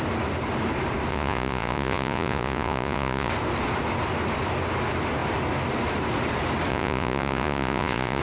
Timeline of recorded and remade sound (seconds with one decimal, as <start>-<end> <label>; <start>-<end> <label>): 0.0-1.1 recorded; 1.1-3.3 remade; 3.3-6.7 recorded; 6.7-8.2 remade